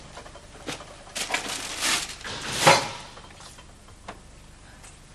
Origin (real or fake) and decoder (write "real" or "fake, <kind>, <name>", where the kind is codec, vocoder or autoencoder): fake, vocoder, BigVGAN v2